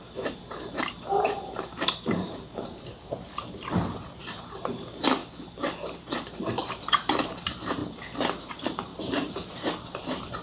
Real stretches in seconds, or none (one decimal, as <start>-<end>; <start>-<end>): 5.2-6.0; 7.8-8.4

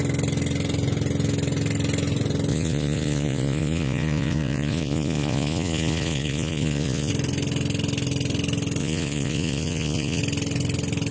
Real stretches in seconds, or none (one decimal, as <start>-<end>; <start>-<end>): 0.0-2.5; 7.1-8.8; 10.2-11.1

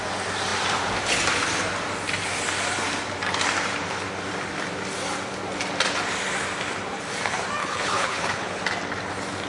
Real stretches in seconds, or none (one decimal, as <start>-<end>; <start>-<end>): 0.0-7.6; 8.6-9.5

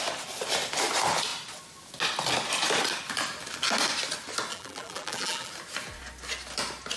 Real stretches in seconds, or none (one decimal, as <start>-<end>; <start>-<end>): 0.0-4.5; 5.5-7.0